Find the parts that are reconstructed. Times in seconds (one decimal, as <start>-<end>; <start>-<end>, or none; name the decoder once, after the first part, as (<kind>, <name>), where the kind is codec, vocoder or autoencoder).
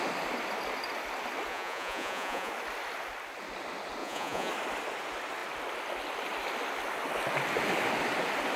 1.5-2.5 (vocoder, Vocos); 4.0-4.5